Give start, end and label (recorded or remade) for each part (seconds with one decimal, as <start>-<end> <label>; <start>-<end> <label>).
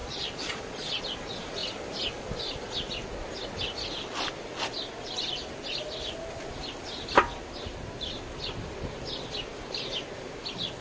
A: 0.0-1.0 remade; 1.0-10.8 recorded